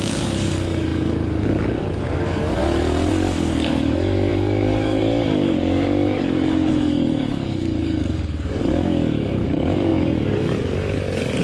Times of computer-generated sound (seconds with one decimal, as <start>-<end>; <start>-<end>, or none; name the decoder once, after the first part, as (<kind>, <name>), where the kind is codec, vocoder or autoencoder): 0.0-2.6 (codec, DAC); 3.1-11.4